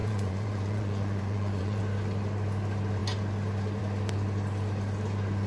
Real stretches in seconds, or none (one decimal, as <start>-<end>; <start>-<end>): 1.8-5.5

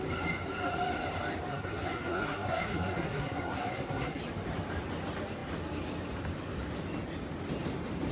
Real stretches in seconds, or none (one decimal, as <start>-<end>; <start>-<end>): 0.0-1.5; 4.2-8.1

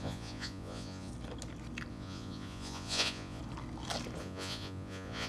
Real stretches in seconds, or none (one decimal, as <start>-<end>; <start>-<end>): 1.1-1.9; 3.4-4.2

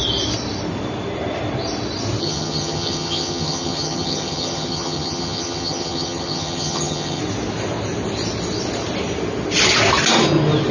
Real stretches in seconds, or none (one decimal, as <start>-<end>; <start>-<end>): 0.0-2.2; 7.2-10.7

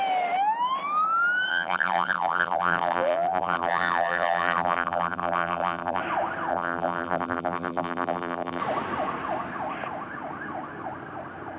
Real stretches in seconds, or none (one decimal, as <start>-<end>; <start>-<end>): 0.0-1.5; 6.0-6.5; 8.6-11.6

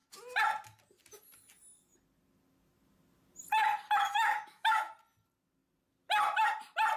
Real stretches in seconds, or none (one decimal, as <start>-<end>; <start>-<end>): 0.0-4.1; 4.9-7.0

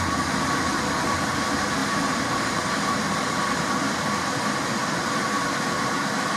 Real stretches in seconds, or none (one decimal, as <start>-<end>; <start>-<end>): none

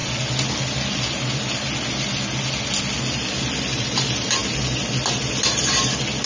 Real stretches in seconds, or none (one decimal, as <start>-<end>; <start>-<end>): 0.0-6.3